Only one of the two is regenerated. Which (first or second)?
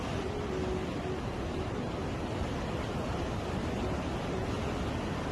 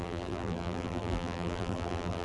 second